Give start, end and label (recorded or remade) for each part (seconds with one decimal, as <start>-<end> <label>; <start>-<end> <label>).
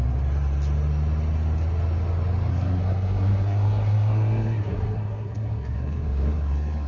0.0-2.5 recorded; 2.5-6.9 remade